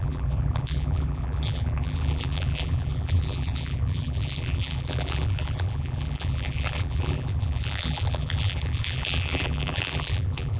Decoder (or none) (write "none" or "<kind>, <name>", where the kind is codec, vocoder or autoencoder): vocoder, BigVGAN v2